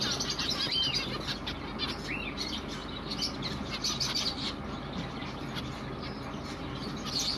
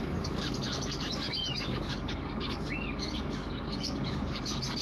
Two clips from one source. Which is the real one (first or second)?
first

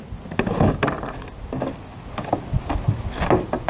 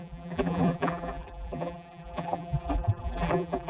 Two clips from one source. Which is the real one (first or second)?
first